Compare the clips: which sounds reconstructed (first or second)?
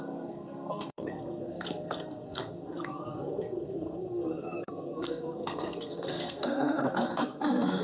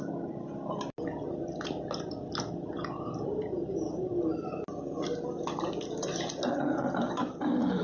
first